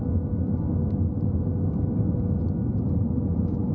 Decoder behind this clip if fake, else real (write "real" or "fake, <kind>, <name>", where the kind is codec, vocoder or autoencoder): real